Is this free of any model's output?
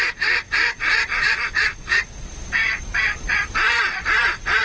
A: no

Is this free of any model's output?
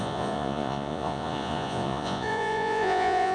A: no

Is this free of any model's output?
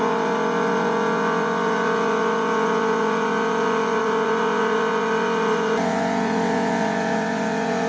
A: no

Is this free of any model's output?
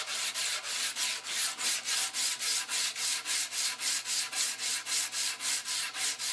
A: yes